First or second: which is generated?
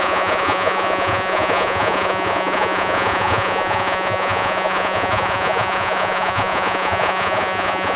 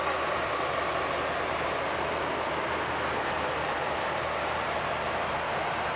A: first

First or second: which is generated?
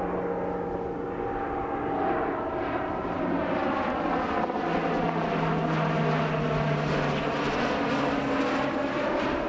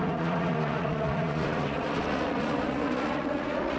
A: second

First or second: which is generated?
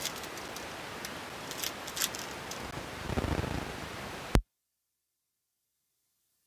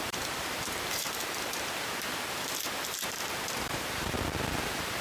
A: second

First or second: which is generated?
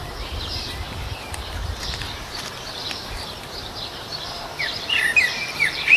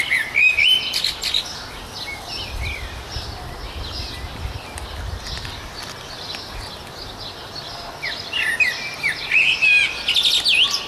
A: first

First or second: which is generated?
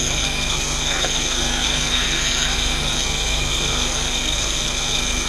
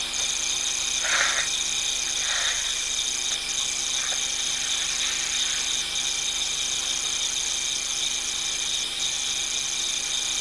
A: first